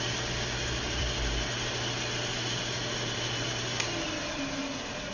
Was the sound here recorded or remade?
remade